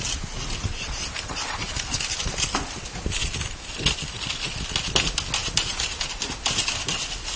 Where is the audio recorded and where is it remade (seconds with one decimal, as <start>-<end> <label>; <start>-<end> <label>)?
0.0-0.7 recorded; 0.7-1.7 remade; 1.7-5.4 recorded; 5.4-6.0 remade; 6.0-7.4 recorded